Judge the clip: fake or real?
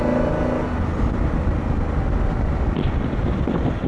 real